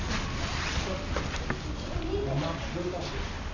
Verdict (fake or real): real